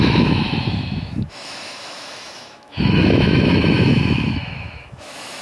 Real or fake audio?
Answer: fake